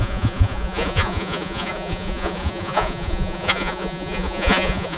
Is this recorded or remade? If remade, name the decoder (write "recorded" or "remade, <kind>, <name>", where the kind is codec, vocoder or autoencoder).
remade, vocoder, Vocos